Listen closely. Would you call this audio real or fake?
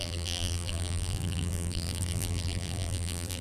fake